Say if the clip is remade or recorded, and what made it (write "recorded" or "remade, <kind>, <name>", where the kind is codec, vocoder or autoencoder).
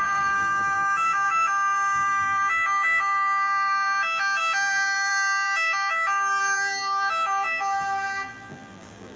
remade, vocoder, BigVGAN v2